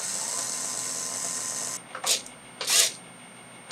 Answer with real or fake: real